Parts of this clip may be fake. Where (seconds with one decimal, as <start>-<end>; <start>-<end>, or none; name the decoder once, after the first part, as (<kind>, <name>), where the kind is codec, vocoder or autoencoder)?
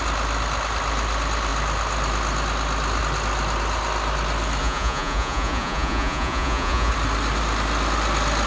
4.6-6.9 (vocoder, Vocos)